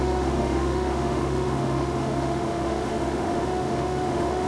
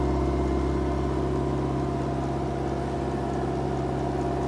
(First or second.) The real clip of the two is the second